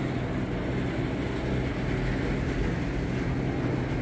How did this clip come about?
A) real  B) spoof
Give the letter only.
A